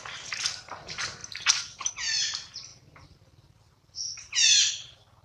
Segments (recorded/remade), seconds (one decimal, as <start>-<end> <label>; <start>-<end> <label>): 0.0-5.2 recorded